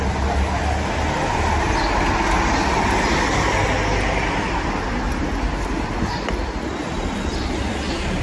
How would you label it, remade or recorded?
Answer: recorded